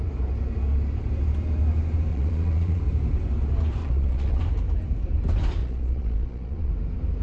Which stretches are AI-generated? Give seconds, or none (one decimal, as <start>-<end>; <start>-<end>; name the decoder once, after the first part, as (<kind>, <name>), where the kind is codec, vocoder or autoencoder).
2.1-2.8 (vocoder, Vocos); 3.8-4.4; 5.6-6.7